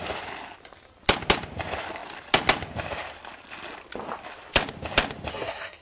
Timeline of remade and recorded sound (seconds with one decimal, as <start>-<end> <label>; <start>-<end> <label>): 0.0-5.3 recorded; 5.3-5.8 remade

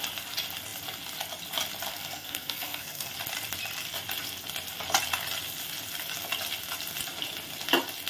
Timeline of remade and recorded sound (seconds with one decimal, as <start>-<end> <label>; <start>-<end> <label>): 0.0-1.9 recorded; 1.9-3.1 remade; 3.1-8.1 recorded

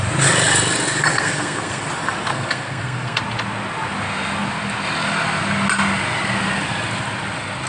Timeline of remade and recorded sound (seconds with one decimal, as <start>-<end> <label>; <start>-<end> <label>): 0.0-1.1 recorded; 1.1-1.9 remade; 1.9-2.3 recorded; 2.3-3.2 remade; 3.2-7.7 recorded

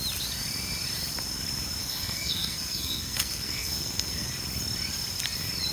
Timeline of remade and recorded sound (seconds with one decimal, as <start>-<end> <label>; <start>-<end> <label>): 0.0-1.8 recorded; 1.8-4.3 remade; 4.3-5.7 recorded

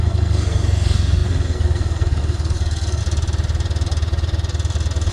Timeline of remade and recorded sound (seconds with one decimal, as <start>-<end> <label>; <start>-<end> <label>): 0.0-3.0 remade; 3.0-5.1 recorded

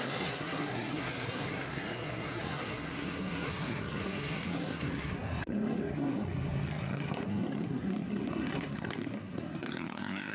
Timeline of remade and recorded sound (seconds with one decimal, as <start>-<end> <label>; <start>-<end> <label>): 0.0-10.3 remade